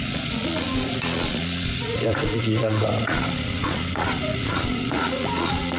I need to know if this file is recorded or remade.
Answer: remade